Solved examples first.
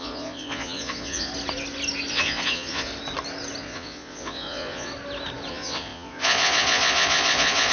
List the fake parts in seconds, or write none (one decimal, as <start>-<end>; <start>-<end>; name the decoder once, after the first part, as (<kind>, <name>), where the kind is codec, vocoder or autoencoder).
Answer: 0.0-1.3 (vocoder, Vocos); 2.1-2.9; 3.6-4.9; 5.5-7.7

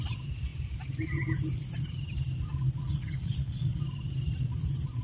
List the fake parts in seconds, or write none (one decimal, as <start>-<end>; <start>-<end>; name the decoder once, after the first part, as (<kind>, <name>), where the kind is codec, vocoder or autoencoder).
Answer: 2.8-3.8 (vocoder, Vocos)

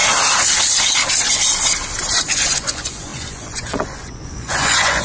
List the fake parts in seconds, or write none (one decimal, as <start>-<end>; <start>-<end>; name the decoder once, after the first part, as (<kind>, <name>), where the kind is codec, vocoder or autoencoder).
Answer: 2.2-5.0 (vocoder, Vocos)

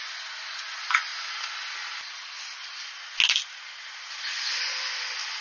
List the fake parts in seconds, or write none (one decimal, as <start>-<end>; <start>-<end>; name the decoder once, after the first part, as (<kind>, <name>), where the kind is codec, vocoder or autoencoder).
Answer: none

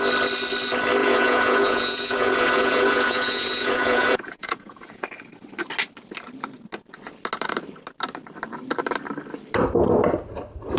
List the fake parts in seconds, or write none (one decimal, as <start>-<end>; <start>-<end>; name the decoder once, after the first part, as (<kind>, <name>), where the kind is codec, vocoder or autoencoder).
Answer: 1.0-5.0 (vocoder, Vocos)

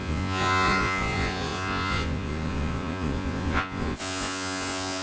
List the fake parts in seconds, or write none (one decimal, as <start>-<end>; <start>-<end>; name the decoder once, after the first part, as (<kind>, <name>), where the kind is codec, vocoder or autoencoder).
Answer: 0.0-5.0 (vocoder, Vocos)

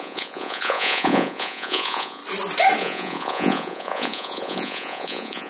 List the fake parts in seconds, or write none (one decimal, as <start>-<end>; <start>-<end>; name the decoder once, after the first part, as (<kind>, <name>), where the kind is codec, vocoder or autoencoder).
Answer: 0.0-2.2 (vocoder, Vocos); 2.8-5.5